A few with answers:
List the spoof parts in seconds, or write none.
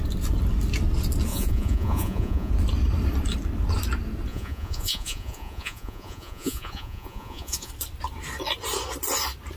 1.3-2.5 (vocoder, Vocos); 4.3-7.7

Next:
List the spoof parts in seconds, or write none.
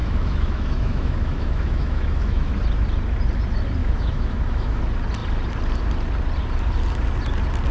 0.0-2.5 (autoencoder, DAC-VAE); 3.8-4.8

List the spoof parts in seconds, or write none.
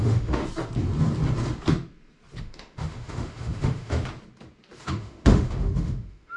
0.0-0.4 (autoencoder, DAC-VAE); 2.4-4.0; 4.8-6.4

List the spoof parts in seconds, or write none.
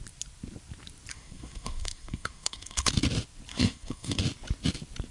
1.1-2.9 (codec, SNAC); 3.5-4.2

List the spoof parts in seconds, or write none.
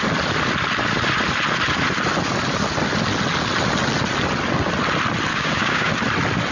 5.3-5.9 (codec, DAC)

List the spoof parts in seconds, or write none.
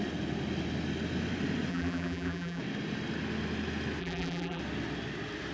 1.7-2.6 (vocoder, BigVGAN v2); 4.0-4.6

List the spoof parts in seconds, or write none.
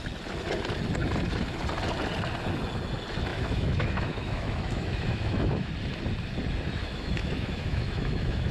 3.3-5.7 (autoencoder, DAC-VAE); 6.8-8.5